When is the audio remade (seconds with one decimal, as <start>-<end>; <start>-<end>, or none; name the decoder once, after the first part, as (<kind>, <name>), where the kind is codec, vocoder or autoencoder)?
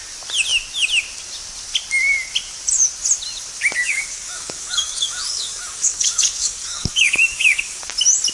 3.8-7.8 (codec, DAC)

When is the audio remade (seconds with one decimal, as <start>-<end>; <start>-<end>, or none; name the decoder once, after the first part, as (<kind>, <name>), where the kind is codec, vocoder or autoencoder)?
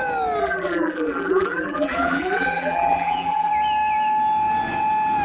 0.4-3.5 (vocoder, BigVGAN v2)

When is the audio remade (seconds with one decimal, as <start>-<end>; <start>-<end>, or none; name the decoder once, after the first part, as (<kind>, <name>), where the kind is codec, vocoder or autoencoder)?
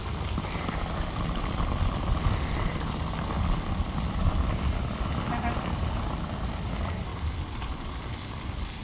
7.1-8.8 (vocoder, BigVGAN v2)